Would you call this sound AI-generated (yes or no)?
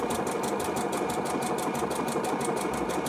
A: yes